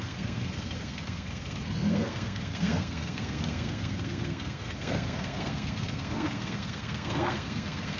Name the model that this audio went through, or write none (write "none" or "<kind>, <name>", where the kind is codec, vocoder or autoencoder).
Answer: codec, SNAC